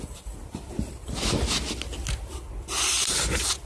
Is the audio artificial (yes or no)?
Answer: no